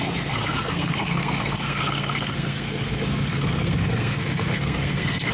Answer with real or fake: fake